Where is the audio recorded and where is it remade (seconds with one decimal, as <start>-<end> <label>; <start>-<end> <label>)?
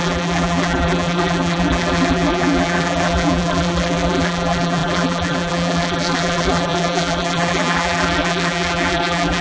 0.0-9.4 remade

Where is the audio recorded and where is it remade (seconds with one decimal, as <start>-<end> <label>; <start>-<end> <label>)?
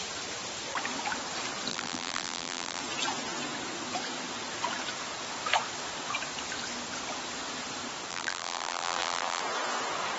0.0-1.7 recorded; 1.7-2.8 remade; 2.8-8.1 recorded; 8.1-9.4 remade; 9.4-10.2 recorded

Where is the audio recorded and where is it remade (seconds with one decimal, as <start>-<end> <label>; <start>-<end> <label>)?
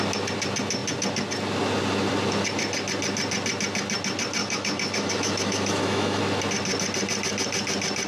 0.0-4.4 recorded; 4.4-6.2 remade; 6.2-8.1 recorded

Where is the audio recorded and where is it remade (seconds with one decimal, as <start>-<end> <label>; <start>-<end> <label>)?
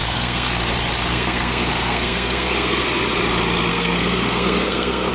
0.0-0.6 remade; 0.6-1.1 recorded; 1.1-2.8 remade; 2.8-3.7 recorded; 3.7-5.1 remade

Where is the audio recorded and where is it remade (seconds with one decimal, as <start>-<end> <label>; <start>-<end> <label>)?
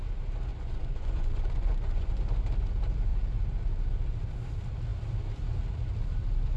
0.0-0.5 recorded; 0.5-2.1 remade; 2.1-6.6 recorded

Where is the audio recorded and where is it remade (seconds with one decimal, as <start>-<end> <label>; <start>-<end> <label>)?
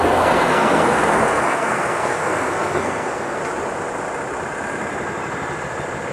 0.0-3.4 remade; 3.4-6.1 recorded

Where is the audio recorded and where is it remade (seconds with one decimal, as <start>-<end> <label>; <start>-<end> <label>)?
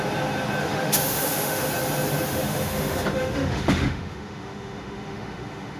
0.0-0.6 recorded; 0.6-1.7 remade; 1.7-2.3 recorded; 2.3-5.8 remade